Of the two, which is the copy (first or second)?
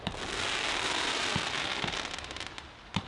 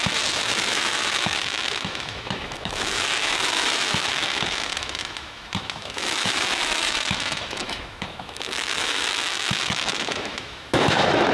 second